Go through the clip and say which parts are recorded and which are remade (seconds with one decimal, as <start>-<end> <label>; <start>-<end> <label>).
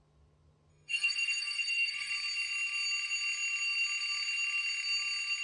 0.0-0.7 recorded; 0.7-2.1 remade; 2.1-5.4 recorded